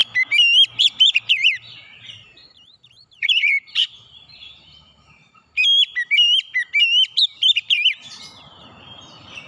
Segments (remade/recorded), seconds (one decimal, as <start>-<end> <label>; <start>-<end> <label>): 0.0-0.7 recorded; 0.7-5.6 remade; 5.6-8.4 recorded; 8.4-9.5 remade